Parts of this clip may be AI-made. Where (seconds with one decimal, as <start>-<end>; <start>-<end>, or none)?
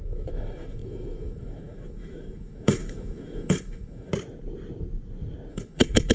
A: 0.0-4.1; 5.5-6.1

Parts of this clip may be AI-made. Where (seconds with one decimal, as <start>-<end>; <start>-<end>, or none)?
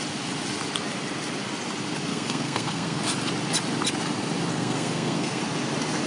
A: 2.1-3.0; 4.5-5.4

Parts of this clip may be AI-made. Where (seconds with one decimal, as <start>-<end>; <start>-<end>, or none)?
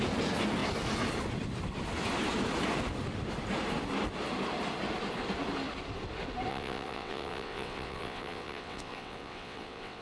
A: 6.5-10.0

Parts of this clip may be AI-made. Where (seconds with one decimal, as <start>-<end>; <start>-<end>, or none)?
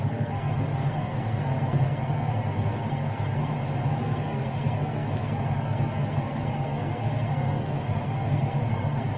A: 0.0-3.5; 4.0-9.2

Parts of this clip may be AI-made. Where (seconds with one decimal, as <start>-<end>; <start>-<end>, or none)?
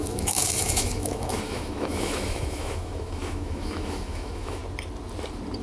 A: 0.0-4.6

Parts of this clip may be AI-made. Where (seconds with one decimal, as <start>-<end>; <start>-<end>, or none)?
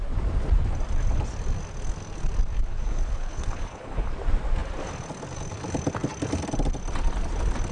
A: 2.7-4.1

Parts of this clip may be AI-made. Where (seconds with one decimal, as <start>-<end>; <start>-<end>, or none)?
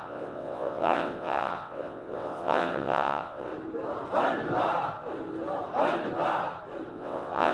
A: 0.0-3.5; 6.9-7.5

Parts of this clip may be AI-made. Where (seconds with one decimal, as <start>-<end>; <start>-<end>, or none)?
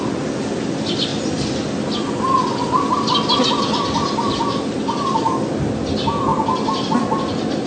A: none